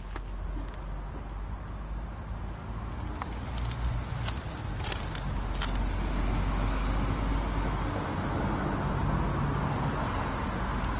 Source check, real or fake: real